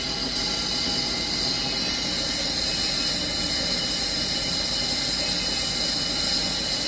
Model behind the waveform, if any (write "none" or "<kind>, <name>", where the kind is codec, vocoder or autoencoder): none